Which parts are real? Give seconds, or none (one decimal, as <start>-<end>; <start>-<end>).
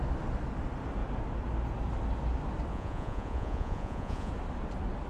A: 0.0-2.7; 4.3-5.1